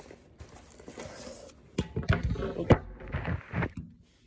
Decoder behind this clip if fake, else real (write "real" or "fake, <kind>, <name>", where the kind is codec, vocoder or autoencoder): real